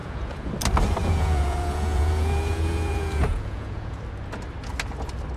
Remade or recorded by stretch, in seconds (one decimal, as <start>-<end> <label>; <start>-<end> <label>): 0.0-0.5 remade; 0.5-1.0 recorded; 1.0-4.0 remade; 4.0-5.4 recorded